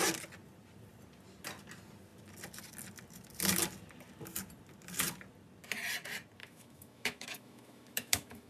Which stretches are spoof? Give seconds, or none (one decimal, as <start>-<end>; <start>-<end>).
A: 6.4-8.5